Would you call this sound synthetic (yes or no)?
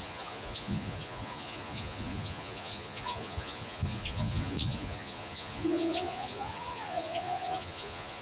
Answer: yes